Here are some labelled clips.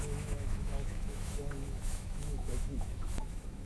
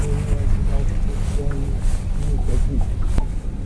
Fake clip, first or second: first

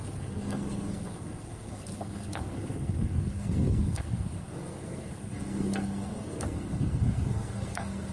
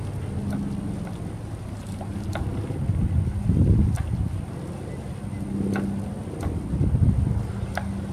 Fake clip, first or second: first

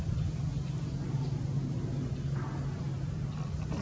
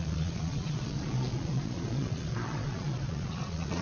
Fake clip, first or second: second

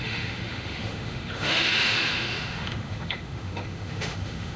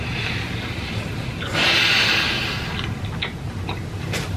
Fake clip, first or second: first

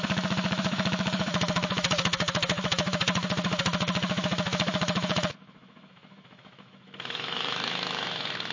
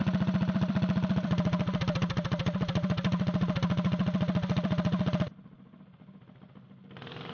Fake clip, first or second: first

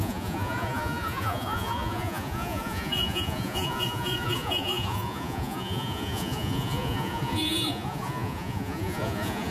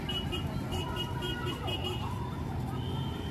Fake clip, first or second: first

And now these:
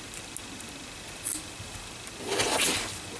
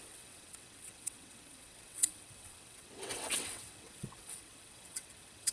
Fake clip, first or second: second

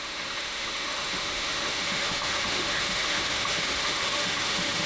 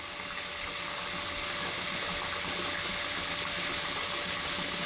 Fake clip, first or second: first